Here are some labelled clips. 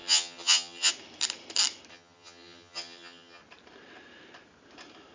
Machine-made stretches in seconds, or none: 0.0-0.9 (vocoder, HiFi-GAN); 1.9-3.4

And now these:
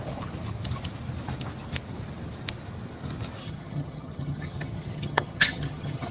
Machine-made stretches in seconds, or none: 3.4-6.1 (vocoder, HiFi-GAN)

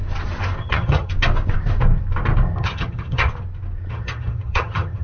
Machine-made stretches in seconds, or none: 0.6-1.1 (vocoder, HiFi-GAN); 2.6-3.3; 3.9-5.0

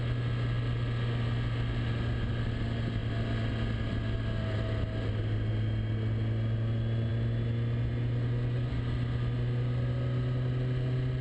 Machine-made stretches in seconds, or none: none

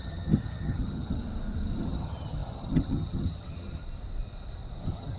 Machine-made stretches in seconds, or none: 0.0-1.2 (vocoder, HiFi-GAN); 1.8-3.8; 4.8-5.2

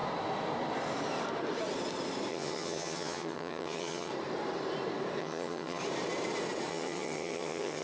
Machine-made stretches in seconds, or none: 2.3-4.1 (vocoder, HiFi-GAN); 5.2-5.8; 6.7-7.8

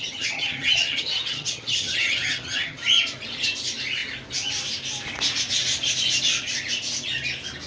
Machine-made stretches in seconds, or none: 0.0-2.8 (vocoder, HiFi-GAN)